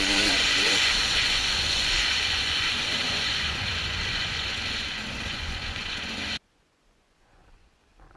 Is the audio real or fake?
fake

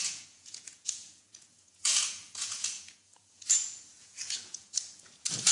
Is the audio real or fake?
fake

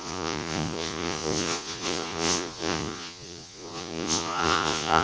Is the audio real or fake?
fake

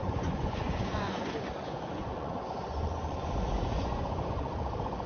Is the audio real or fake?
fake